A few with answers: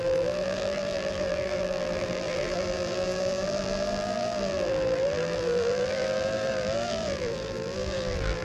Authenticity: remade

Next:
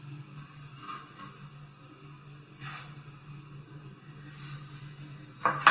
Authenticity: recorded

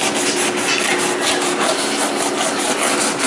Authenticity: recorded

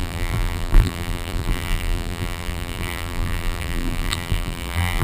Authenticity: remade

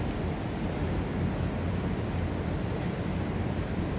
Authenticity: recorded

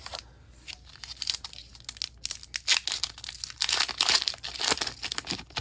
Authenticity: recorded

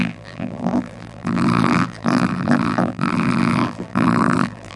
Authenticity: remade